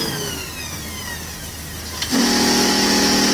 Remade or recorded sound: recorded